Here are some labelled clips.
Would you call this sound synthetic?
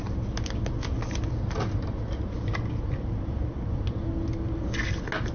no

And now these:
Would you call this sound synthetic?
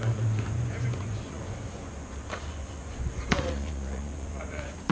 yes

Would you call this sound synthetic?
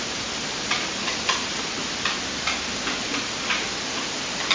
no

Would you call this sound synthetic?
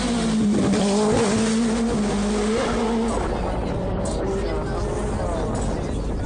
no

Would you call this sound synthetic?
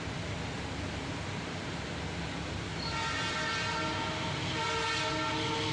no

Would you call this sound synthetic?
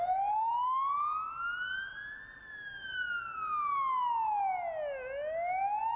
no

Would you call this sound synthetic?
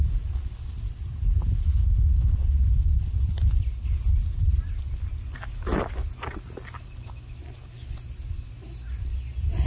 no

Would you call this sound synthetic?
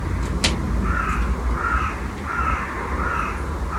no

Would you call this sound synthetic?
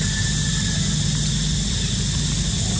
yes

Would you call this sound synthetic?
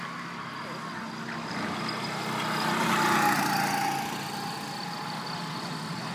no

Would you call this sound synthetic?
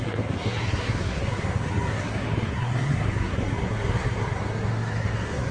yes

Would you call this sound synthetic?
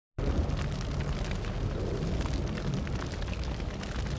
no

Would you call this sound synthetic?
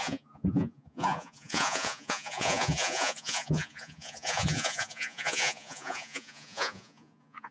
yes